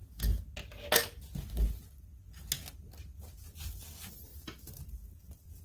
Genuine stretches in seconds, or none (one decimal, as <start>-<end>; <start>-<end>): 0.0-5.6